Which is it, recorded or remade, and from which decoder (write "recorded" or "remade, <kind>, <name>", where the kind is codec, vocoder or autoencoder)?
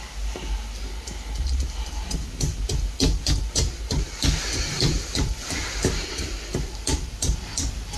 recorded